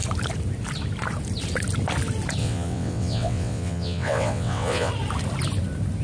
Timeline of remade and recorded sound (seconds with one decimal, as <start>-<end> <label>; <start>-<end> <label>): 0.0-2.4 recorded; 2.4-4.9 remade; 4.9-6.0 recorded